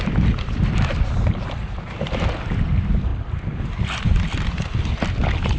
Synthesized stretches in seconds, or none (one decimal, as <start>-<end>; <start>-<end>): none